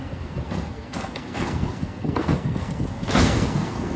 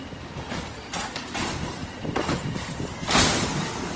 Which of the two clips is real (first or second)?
second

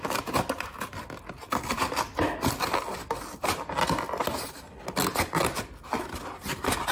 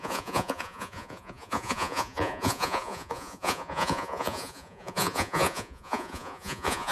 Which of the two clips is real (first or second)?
first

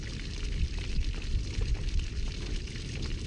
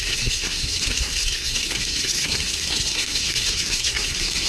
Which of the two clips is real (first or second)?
first